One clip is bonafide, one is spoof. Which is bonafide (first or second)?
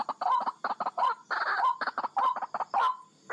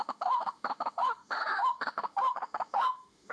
first